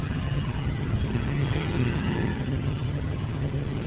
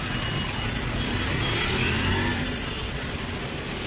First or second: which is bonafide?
second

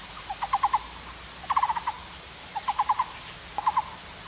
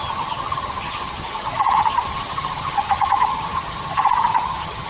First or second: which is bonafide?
first